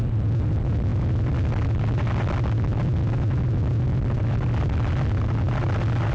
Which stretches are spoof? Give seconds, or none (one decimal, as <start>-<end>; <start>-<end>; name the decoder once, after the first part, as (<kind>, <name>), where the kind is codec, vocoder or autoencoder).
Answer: none